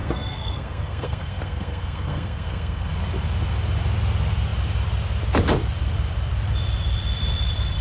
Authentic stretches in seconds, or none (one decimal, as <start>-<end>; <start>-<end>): 2.9-7.8